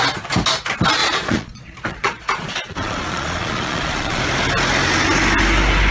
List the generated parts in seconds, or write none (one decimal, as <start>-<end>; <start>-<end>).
1.0-4.2